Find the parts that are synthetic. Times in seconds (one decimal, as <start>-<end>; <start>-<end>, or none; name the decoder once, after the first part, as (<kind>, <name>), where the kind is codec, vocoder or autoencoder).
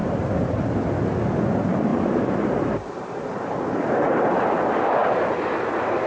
0.0-0.7 (vocoder, BigVGAN v2); 1.9-4.3